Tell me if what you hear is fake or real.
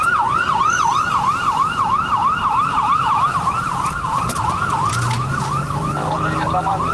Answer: fake